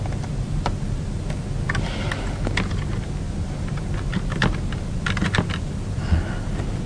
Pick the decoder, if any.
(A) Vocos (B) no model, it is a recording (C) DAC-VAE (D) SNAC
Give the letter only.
B